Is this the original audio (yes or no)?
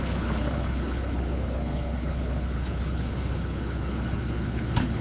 no